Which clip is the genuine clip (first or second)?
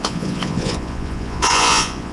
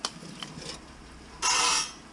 second